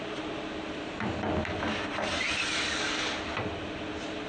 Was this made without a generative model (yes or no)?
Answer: yes